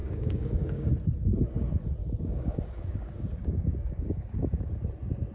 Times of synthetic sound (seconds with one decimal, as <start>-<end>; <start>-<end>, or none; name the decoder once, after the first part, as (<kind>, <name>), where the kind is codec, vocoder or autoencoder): 0.0-0.9 (codec, DAC); 2.0-4.8